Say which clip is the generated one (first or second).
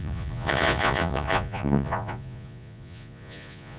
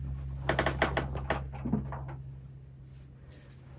first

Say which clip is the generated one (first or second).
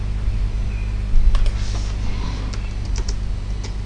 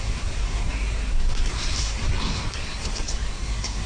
second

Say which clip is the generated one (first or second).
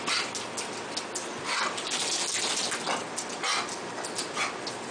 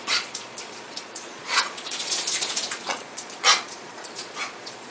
second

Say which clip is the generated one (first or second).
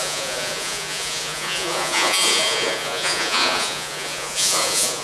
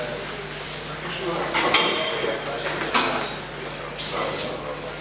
first